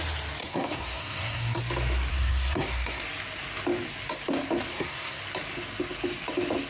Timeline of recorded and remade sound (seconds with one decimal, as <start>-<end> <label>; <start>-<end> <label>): 0.0-0.4 recorded; 0.4-1.6 remade; 1.6-2.1 recorded; 2.1-3.0 remade; 3.0-4.7 recorded; 4.7-5.2 remade; 5.2-6.7 recorded